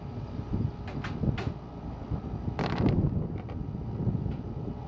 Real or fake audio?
real